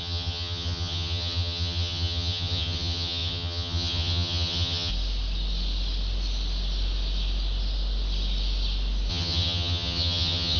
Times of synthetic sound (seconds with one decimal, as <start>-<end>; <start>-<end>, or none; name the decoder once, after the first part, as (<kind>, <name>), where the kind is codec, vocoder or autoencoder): 0.0-4.9 (vocoder, HiFi-GAN); 9.1-10.6

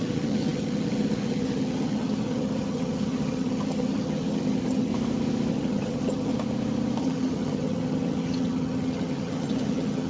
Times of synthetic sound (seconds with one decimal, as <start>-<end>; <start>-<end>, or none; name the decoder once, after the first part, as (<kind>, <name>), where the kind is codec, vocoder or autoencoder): 0.0-4.9 (vocoder, HiFi-GAN); 5.5-6.3; 7.0-10.1